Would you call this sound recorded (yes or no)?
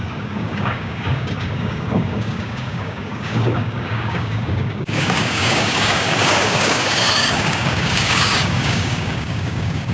no